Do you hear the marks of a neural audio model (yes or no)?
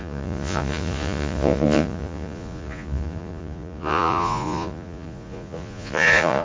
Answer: yes